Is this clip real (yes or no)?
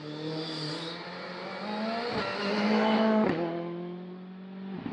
yes